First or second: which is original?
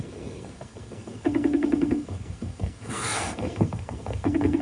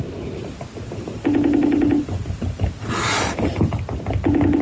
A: second